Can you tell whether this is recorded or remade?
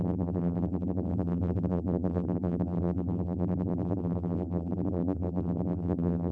remade